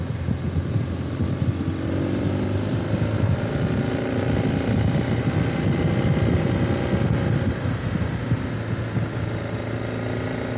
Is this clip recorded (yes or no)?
yes